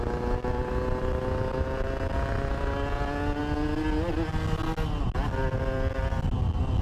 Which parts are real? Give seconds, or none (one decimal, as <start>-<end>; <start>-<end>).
0.0-6.8